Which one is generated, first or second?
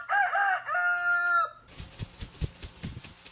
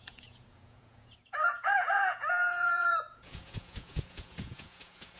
second